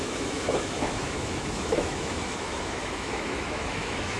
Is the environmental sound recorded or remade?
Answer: remade